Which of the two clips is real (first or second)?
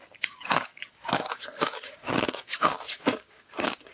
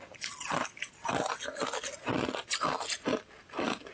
second